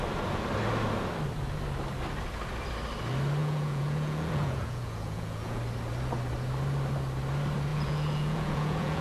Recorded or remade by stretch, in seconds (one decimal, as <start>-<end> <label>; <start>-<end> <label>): 0.0-3.4 recorded; 3.4-5.6 remade; 5.6-7.7 recorded; 7.7-9.0 remade

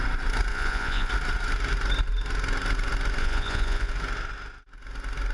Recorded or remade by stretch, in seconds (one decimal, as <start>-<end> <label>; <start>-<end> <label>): 0.0-0.5 recorded; 0.5-1.1 remade; 1.1-3.2 recorded; 3.2-3.9 remade; 3.9-5.3 recorded

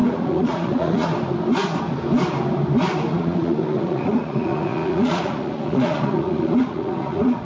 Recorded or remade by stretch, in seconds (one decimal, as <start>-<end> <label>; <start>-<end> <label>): 0.0-1.1 remade; 1.1-3.1 recorded; 3.1-7.4 remade